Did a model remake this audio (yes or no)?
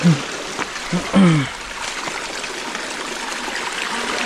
no